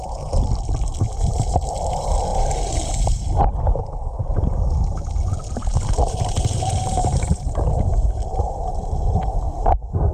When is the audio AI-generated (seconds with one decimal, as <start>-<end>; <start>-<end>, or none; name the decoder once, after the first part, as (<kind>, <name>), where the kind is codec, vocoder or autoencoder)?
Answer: 5.6-10.1 (vocoder, BigVGAN v2)